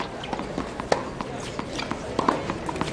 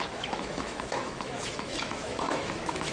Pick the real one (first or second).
first